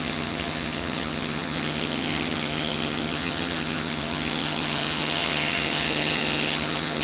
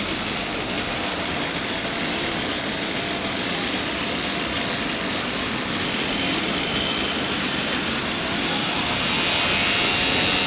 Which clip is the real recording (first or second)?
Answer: second